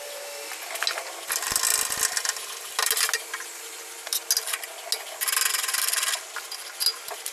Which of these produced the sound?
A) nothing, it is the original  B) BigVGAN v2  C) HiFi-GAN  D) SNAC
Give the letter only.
A